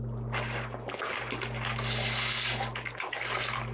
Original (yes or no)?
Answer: yes